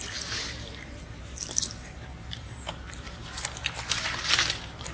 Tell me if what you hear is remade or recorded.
remade